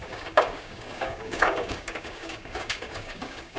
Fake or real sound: fake